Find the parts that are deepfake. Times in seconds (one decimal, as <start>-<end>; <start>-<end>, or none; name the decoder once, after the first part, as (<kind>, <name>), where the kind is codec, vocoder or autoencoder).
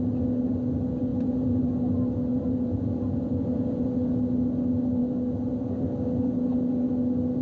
1.1-1.6 (vocoder, Vocos); 2.3-3.9